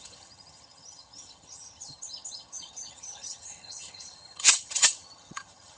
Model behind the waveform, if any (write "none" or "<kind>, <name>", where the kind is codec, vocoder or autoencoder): vocoder, HiFi-GAN